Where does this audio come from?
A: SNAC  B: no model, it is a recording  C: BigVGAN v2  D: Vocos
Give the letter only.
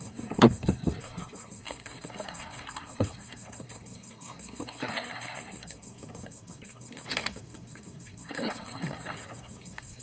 A